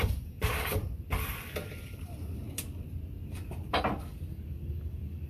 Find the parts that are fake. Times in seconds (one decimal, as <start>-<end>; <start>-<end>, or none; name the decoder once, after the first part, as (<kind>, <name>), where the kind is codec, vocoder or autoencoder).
0.0-0.8 (codec, DAC); 4.0-5.3